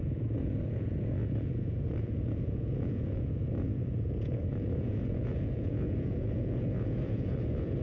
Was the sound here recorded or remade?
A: remade